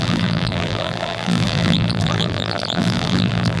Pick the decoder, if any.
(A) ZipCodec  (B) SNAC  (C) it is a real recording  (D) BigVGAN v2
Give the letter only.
D